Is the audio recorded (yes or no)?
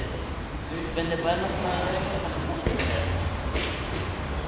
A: yes